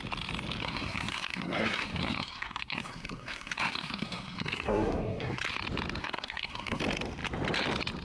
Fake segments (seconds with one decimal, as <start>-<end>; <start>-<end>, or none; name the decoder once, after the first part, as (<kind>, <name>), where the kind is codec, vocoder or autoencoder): 0.6-5.4 (codec, SNAC); 6.0-6.8

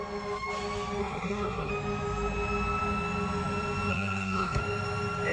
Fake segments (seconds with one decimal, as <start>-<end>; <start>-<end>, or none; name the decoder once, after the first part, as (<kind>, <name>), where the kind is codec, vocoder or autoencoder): 1.0-1.7 (codec, SNAC); 3.9-4.6

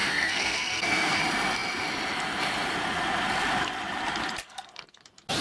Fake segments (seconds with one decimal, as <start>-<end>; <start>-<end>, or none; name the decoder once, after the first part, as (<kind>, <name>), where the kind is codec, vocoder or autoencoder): 0.0-1.2 (codec, SNAC); 4.4-5.0

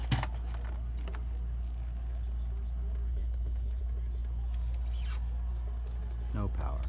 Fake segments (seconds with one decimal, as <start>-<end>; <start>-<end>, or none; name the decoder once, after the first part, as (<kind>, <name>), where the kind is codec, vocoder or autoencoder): 3.2-3.8 (codec, HILCodec)

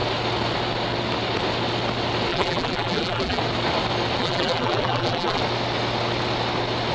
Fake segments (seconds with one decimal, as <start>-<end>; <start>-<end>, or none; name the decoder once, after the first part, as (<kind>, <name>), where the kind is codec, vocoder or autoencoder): 2.3-3.4 (vocoder, BigVGAN v2); 4.2-5.4

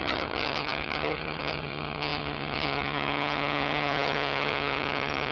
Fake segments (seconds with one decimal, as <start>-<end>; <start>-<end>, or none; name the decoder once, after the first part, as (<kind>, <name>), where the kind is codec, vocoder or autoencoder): 0.0-5.3 (vocoder, HiFi-GAN)

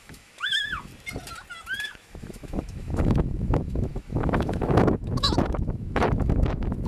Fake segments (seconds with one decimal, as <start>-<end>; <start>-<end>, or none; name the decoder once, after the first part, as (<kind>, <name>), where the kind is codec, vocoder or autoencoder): 0.0-0.9 (autoencoder, DAC-VAE); 1.8-6.9

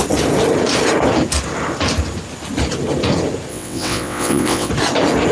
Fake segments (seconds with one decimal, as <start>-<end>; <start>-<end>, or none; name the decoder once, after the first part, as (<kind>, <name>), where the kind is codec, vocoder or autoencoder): 3.5-4.7 (vocoder, WaveNeXt)